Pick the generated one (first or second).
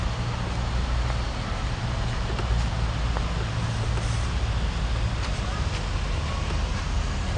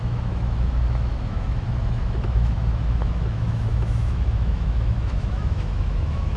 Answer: second